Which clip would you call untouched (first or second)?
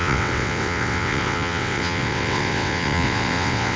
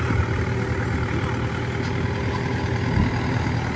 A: second